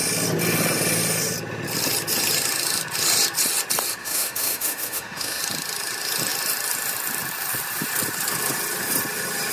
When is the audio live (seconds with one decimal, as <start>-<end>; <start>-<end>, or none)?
0.0-4.0; 5.4-9.5

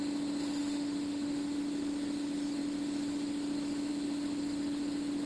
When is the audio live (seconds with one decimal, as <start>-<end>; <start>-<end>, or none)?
0.0-0.6; 1.6-5.3

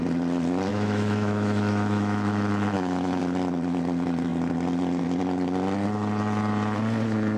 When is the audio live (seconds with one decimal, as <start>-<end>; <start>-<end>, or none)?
0.0-0.7; 3.2-7.4

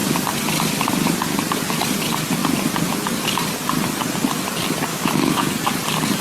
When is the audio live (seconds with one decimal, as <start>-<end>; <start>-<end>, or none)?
0.0-4.9; 5.5-6.2